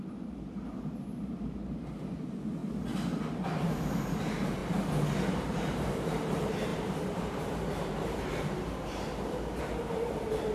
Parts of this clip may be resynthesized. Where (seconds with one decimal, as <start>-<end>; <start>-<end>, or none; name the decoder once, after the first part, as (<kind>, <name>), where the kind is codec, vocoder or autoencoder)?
0.0-2.6 (vocoder, BigVGAN v2); 3.3-4.6; 5.3-10.5